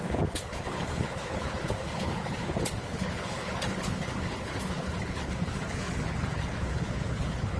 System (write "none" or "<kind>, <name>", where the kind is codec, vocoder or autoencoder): codec, HILCodec